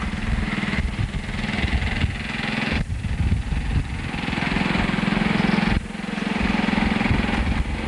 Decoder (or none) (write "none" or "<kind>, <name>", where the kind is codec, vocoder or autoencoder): none